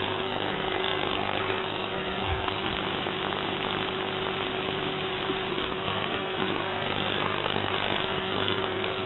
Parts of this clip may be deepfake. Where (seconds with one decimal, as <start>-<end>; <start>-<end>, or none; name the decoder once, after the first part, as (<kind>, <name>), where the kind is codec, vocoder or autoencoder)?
0.0-2.7 (codec, SNAC); 5.5-9.1